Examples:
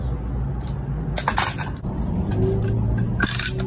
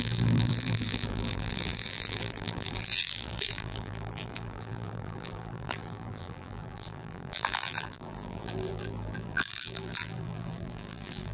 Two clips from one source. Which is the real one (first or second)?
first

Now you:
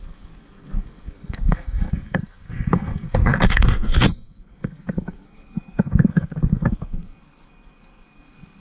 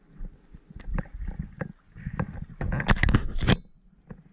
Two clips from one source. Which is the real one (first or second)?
second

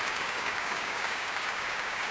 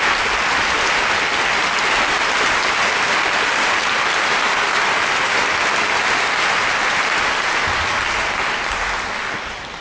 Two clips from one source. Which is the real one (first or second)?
second